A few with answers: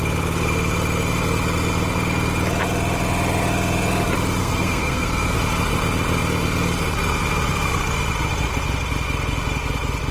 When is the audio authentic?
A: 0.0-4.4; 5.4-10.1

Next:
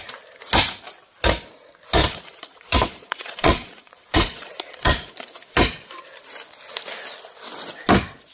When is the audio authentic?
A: 0.0-2.0; 5.1-8.3

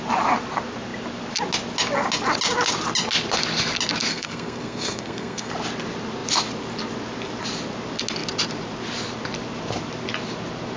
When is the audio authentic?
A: 0.0-4.1; 5.5-10.8

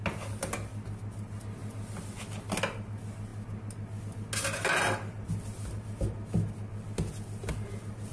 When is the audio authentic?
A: 0.0-8.1

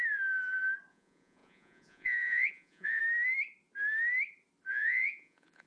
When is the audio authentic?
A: 0.0-0.9; 3.0-4.7

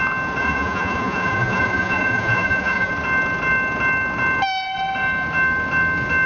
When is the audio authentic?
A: 0.0-0.4; 2.9-6.3